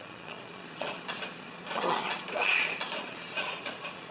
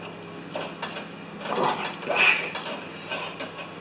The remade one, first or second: first